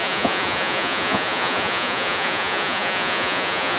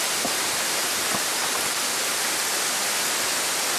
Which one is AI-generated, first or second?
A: first